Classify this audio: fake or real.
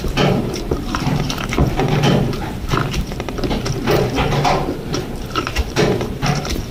fake